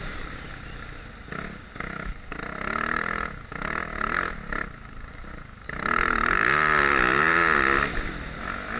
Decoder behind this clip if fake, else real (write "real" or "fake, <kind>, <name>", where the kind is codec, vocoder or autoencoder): real